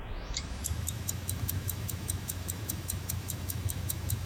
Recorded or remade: remade